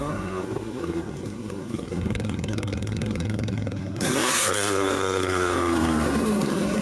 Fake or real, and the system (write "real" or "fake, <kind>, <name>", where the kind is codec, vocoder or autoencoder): fake, codec, SNAC